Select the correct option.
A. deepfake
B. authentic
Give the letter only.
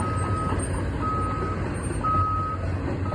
B